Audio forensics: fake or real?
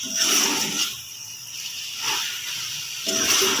real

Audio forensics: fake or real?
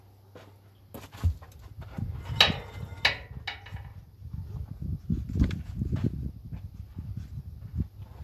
real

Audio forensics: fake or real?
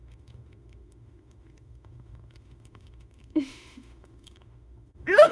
fake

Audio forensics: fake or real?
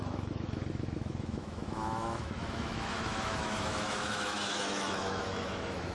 fake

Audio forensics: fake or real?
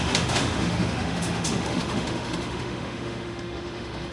fake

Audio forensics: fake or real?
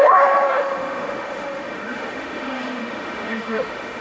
fake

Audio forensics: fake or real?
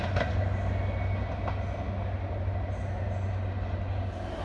real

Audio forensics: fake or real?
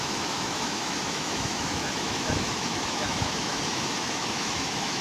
fake